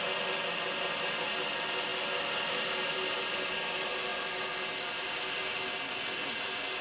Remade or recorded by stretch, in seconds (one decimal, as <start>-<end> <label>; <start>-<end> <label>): 0.0-6.8 recorded